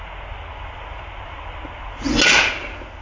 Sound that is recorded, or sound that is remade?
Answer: recorded